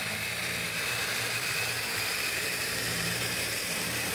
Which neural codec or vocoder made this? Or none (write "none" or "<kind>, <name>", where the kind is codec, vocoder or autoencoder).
vocoder, BigVGAN v2